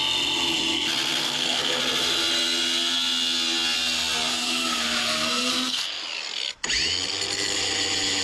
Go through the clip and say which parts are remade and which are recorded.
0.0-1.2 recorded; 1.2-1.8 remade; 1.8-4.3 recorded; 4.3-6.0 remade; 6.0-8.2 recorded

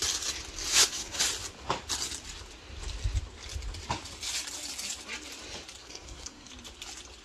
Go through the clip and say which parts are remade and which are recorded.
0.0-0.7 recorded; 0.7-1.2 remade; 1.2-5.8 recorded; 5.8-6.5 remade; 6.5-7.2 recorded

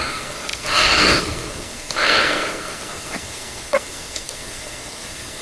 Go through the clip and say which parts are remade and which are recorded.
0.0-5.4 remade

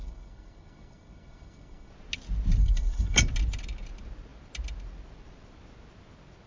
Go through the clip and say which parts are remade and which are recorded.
0.0-1.9 remade; 1.9-2.6 recorded; 2.6-3.2 remade; 3.2-6.5 recorded

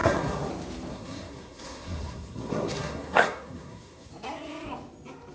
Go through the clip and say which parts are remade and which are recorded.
0.0-0.5 remade; 0.5-0.9 recorded; 0.9-4.1 remade; 4.1-5.3 recorded

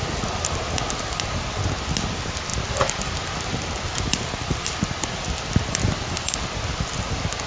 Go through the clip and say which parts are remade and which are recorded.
0.0-7.5 recorded

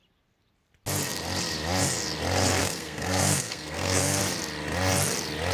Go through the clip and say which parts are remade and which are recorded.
0.0-2.6 recorded; 2.6-4.2 remade; 4.2-5.5 recorded